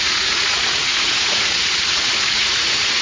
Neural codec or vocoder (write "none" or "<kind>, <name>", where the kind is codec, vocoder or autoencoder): vocoder, Vocos